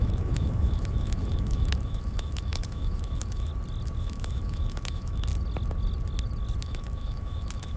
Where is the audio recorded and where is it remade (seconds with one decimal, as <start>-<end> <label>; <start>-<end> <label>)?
0.0-3.5 remade; 3.5-4.0 recorded; 4.0-5.3 remade; 5.3-6.6 recorded; 6.6-7.8 remade